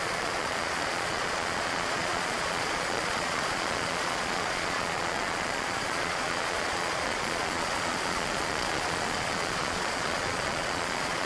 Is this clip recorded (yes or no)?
no